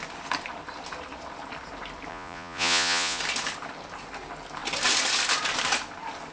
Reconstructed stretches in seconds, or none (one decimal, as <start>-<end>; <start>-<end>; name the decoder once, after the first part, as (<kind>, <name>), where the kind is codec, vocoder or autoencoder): 2.1-3.2 (vocoder, Vocos)